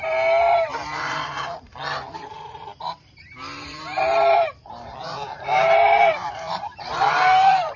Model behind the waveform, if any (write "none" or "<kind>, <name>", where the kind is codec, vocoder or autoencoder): vocoder, BigVGAN v2